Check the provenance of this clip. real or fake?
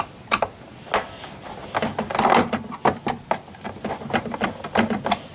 real